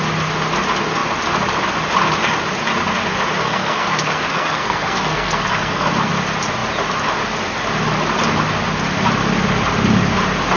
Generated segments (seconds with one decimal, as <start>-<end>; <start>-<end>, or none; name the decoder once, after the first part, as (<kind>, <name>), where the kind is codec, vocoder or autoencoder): 3.4-6.1 (codec, SNAC)